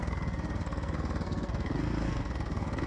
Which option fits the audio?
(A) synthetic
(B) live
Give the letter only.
A